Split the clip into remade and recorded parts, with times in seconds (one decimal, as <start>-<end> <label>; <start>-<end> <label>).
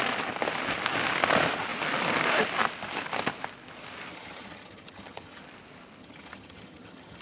0.0-4.1 recorded; 4.1-5.4 remade; 5.4-6.0 recorded; 6.0-7.2 remade